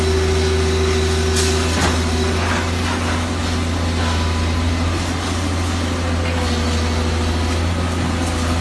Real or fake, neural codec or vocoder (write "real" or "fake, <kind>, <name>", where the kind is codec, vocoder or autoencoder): real